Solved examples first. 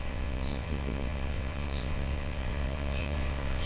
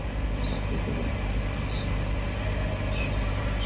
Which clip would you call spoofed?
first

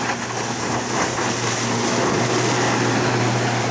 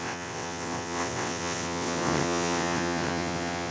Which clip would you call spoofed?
second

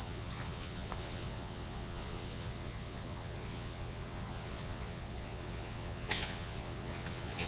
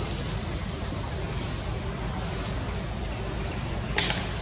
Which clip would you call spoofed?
first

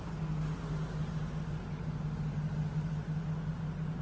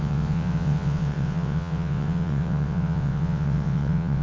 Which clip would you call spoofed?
second